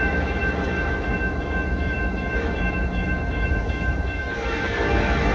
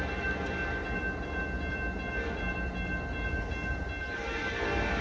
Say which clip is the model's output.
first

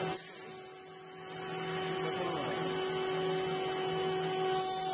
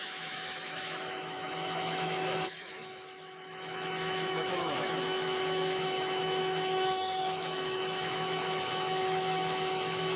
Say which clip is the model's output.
second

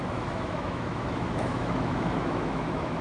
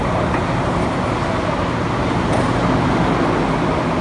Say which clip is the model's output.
first